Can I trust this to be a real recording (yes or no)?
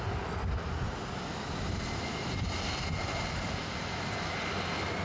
yes